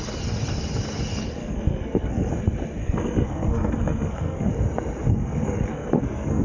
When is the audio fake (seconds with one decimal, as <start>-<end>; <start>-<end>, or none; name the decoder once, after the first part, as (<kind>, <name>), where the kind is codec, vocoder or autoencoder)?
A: 1.4-2.3 (codec, SNAC); 2.8-4.5; 5.1-6.4